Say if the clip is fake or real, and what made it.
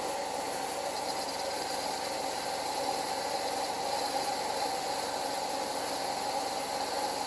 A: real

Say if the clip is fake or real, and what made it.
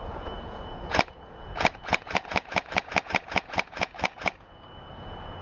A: fake, vocoder, Vocos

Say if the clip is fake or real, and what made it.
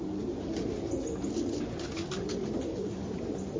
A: real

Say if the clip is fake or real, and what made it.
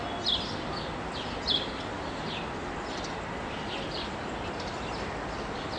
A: real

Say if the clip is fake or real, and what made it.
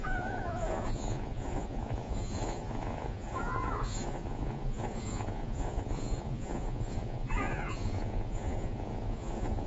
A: fake, vocoder, Vocos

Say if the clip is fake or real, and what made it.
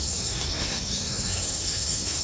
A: fake, codec, SNAC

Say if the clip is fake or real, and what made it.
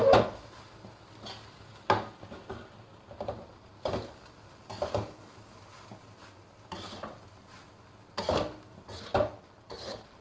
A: real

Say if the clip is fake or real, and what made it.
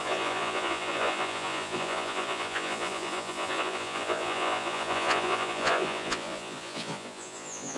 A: fake, vocoder, Vocos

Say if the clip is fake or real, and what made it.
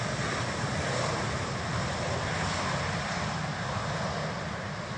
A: real